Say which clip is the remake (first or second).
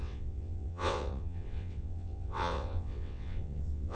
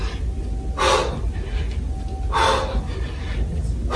first